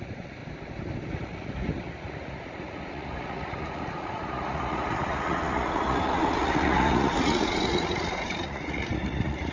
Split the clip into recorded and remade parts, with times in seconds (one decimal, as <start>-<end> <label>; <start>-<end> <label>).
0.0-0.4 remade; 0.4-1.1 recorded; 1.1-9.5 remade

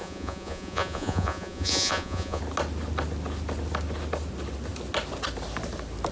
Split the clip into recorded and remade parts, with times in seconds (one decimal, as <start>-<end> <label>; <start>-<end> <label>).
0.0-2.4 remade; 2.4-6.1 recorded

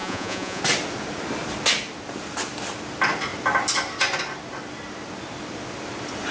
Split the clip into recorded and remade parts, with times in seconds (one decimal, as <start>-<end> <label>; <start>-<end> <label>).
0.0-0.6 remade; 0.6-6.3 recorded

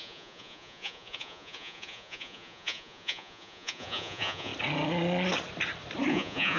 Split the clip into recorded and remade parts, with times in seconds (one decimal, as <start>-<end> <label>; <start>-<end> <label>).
0.0-4.5 remade; 4.5-6.1 recorded; 6.1-6.6 remade